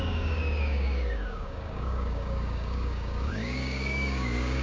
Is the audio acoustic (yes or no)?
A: no